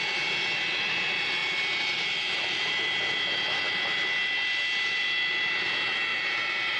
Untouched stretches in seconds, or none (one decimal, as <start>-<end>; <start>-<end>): 0.0-1.4; 2.7-6.1